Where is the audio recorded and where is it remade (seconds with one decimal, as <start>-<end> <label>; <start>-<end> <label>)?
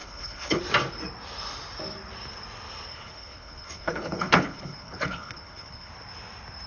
0.0-0.6 remade; 0.6-2.9 recorded; 2.9-5.9 remade; 5.9-6.7 recorded